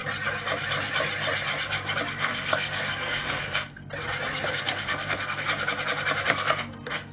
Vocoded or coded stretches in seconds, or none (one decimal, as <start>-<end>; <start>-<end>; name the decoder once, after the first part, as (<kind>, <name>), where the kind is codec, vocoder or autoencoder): 2.1-3.8 (codec, SNAC); 4.5-5.5; 6.3-7.1